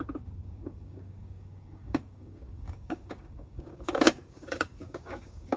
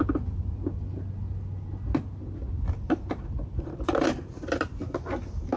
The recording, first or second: second